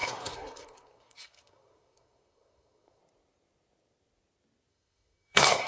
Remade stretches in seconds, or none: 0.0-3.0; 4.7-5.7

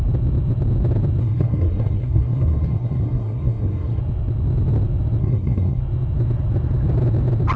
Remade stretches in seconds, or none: 1.2-4.0; 5.2-5.8

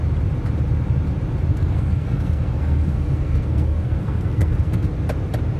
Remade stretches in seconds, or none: 1.5-4.9

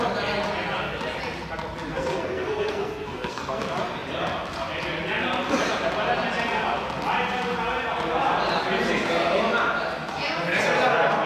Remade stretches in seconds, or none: 1.9-3.6